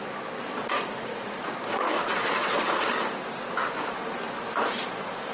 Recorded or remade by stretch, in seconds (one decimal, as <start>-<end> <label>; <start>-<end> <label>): 0.0-0.6 recorded; 0.6-2.9 remade; 2.9-5.3 recorded